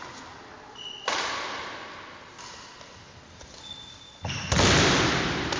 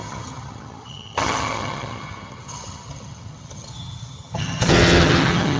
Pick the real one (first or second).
first